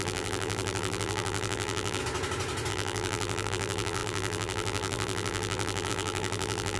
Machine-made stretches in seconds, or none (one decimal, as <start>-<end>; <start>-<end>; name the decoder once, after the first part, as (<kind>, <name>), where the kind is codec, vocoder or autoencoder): 0.0-2.0 (vocoder, BigVGAN v2); 2.7-6.8